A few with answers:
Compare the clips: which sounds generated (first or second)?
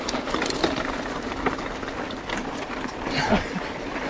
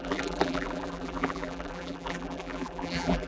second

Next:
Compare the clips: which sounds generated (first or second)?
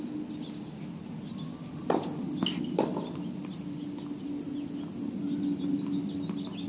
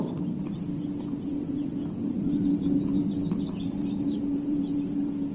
second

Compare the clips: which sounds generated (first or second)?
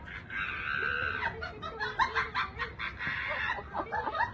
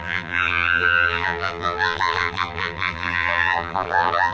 second